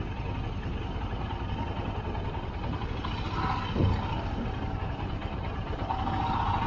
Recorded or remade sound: recorded